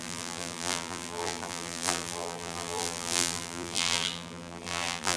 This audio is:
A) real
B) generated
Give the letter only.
B